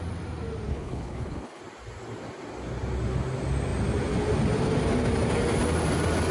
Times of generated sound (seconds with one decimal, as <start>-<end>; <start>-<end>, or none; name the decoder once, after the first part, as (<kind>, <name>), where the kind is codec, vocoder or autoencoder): 0.7-1.6 (codec, HILCodec)

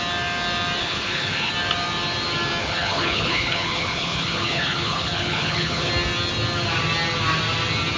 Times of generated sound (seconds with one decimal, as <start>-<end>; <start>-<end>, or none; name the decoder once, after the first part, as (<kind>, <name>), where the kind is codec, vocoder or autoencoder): 0.8-1.5 (codec, HILCodec); 2.6-5.9

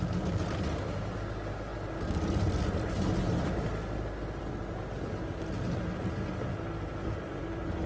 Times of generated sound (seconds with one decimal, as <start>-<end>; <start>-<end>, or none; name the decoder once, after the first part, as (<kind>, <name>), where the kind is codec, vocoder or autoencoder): none

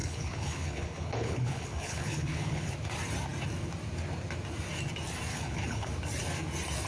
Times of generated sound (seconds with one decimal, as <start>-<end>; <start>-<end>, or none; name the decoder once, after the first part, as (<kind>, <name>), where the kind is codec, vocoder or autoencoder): 0.0-2.7 (codec, HILCodec); 5.3-5.9

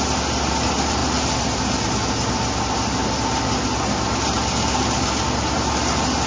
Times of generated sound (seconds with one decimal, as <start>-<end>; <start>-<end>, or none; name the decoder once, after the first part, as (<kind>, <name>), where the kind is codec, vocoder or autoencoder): none

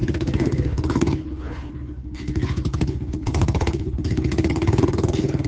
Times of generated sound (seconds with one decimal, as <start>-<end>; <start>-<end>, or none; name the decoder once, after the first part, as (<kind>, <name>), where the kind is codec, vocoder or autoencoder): 0.0-5.5 (codec, HILCodec)